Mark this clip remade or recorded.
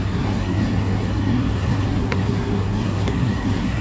remade